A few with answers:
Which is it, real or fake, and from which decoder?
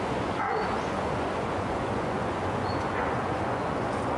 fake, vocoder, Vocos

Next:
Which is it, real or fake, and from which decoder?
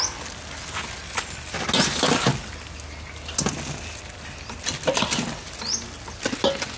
real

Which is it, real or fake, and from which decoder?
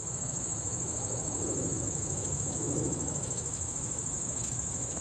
fake, autoencoder, DAC-VAE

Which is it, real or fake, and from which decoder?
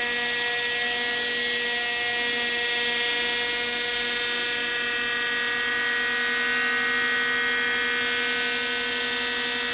real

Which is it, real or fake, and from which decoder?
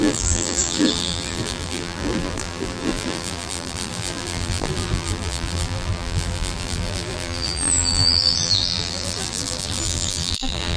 fake, vocoder, BigVGAN v2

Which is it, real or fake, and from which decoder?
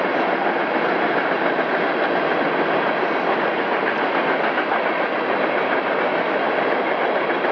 real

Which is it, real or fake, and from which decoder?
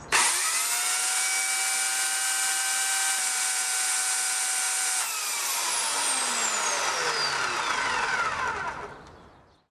real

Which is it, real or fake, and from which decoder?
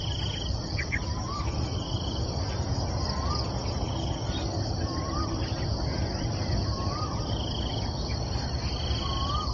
fake, vocoder, BigVGAN v2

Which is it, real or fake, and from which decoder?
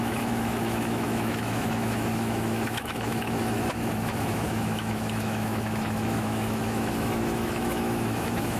fake, autoencoder, DAC-VAE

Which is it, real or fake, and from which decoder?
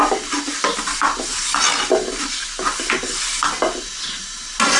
real